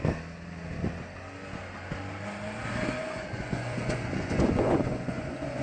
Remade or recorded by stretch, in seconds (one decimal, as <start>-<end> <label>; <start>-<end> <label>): 0.0-3.0 recorded; 3.0-5.6 remade